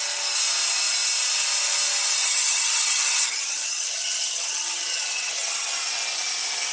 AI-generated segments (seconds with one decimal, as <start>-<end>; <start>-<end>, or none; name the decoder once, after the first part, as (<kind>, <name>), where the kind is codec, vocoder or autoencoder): 2.2-5.7 (vocoder, HiFi-GAN)

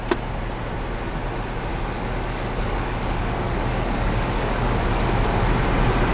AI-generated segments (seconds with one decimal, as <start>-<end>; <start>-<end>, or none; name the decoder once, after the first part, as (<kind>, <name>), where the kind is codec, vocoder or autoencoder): 1.7-5.4 (codec, DAC)

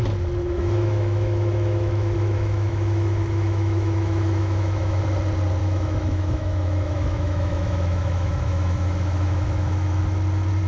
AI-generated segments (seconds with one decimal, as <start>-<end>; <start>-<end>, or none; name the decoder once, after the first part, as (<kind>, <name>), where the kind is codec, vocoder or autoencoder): 0.4-5.0 (autoencoder, DAC-VAE); 5.6-10.0

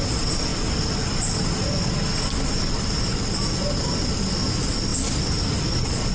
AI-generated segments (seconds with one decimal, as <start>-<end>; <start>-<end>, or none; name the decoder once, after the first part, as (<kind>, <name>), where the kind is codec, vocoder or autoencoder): 4.9-5.6 (vocoder, BigVGAN v2)